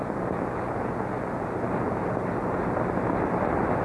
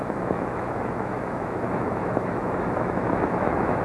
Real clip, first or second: first